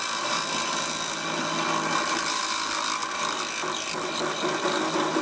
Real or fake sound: real